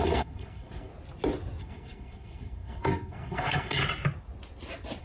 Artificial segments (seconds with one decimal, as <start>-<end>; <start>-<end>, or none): 0.0-0.9; 1.6-3.8